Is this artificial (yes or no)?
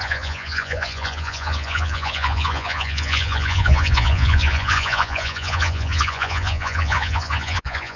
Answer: yes